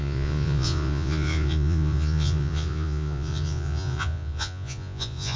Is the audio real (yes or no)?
no